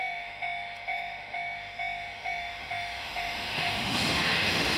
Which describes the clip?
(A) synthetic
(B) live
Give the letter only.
A